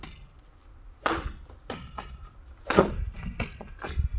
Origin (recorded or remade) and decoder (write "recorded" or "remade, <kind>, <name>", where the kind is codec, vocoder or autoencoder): recorded